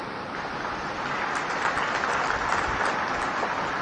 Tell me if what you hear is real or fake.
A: real